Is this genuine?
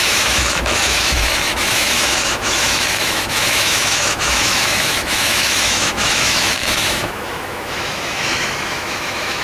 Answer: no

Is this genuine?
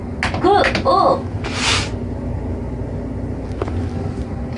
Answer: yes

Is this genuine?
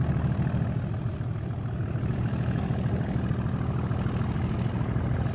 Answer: yes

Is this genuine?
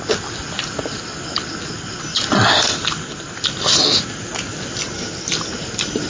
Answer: yes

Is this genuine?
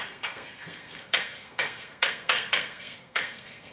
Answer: no